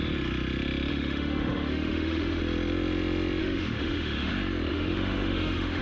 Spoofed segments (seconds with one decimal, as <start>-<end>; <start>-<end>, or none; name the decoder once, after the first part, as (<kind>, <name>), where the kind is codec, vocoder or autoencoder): 0.9-2.4 (autoencoder, DAC-VAE); 3.4-4.3; 4.7-5.8